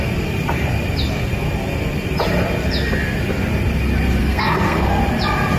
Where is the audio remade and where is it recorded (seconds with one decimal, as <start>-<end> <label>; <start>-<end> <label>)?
0.0-4.2 recorded; 4.2-5.0 remade; 5.0-5.6 recorded